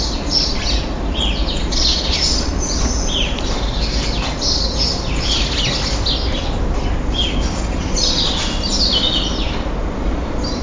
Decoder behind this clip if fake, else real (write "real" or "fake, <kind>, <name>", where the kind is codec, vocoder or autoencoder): real